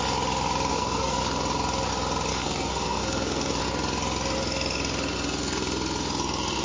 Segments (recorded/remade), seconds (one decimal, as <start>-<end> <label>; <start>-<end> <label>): 0.0-0.7 recorded; 0.7-1.2 remade; 1.2-2.3 recorded; 2.3-3.6 remade; 3.6-6.6 recorded

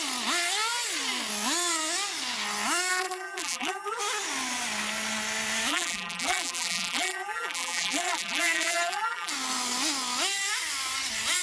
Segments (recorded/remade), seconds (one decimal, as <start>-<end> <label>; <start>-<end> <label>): 0.0-2.9 recorded; 2.9-4.0 remade; 4.0-5.7 recorded; 5.7-9.3 remade; 9.3-11.4 recorded

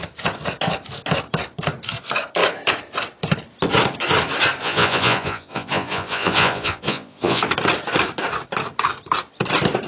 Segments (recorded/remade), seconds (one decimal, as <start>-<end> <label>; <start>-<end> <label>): 0.0-4.6 recorded; 4.6-7.4 remade; 7.4-9.9 recorded

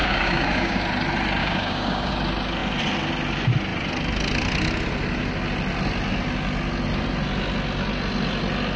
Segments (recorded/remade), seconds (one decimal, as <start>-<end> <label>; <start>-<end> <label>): 0.0-0.8 remade; 0.8-1.4 recorded; 1.4-2.1 remade; 2.1-8.8 recorded

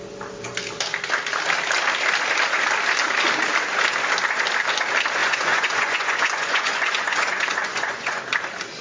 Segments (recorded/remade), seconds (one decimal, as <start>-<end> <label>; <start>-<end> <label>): 0.0-5.2 recorded; 5.2-8.2 remade; 8.2-8.8 recorded

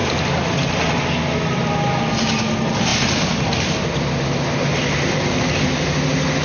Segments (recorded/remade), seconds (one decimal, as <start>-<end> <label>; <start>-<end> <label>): 0.0-6.4 recorded